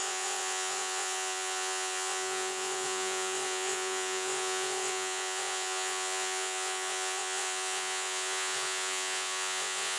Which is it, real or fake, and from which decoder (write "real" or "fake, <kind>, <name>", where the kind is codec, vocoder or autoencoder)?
fake, vocoder, Vocos